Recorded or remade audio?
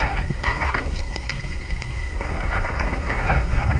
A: remade